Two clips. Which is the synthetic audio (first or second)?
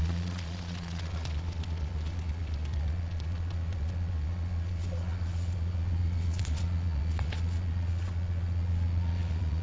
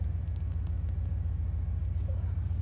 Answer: first